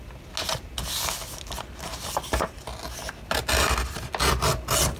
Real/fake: real